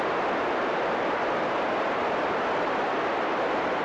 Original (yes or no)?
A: yes